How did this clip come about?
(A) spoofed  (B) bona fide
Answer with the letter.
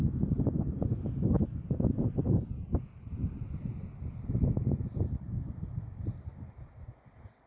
B